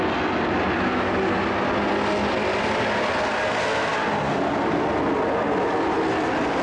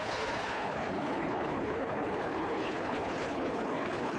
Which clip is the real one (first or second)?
first